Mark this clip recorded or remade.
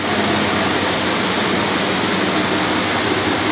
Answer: recorded